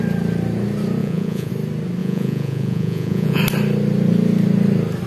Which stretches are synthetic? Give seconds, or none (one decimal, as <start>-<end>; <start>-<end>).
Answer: 1.0-1.5; 2.0-3.4